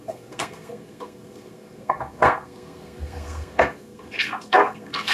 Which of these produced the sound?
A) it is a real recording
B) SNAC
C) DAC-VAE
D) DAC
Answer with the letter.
B